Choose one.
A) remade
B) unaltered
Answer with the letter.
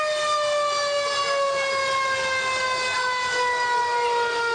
B